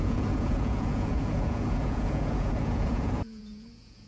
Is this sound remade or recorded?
remade